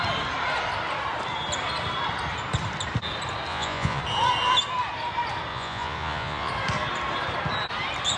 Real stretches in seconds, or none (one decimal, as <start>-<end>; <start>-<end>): 0.0-3.5; 4.0-5.5; 6.5-8.2